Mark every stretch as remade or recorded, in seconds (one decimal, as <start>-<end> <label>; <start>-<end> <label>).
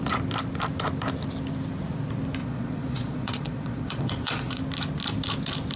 0.0-2.4 recorded; 2.4-4.6 remade; 4.6-5.8 recorded